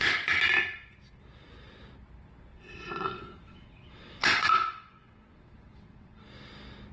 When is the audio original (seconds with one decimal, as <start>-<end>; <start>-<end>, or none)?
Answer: 0.0-2.5; 6.2-6.9